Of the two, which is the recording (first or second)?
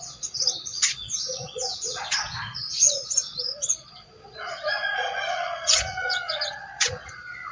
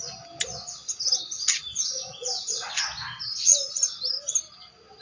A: second